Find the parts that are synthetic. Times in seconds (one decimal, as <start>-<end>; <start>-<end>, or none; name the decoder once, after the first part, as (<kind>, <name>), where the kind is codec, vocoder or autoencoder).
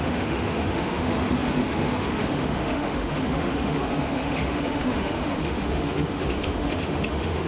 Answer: 0.0-7.5 (autoencoder, DAC-VAE)